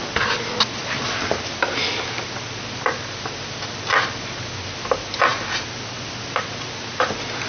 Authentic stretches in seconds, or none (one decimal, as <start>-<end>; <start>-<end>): 0.0-7.5